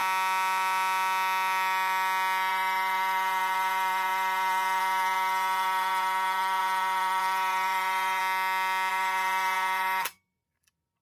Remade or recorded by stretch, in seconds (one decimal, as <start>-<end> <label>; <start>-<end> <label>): 0.0-2.5 recorded; 2.5-8.2 remade; 8.2-8.9 recorded; 8.9-11.0 remade